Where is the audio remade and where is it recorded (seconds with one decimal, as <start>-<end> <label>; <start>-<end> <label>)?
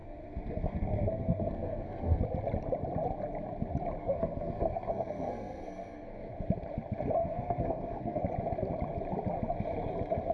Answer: 0.0-2.2 remade; 2.2-4.0 recorded; 4.0-6.3 remade; 6.3-7.2 recorded; 7.2-8.2 remade; 8.2-10.3 recorded